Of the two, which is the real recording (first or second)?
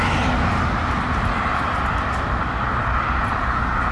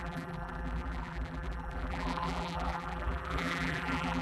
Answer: first